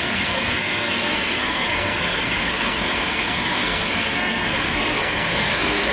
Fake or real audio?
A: fake